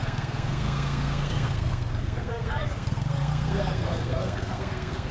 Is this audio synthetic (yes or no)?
yes